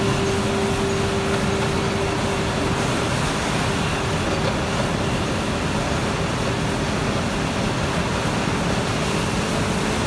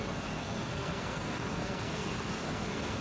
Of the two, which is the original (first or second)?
first